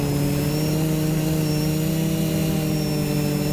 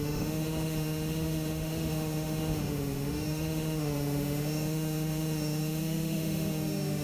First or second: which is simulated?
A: second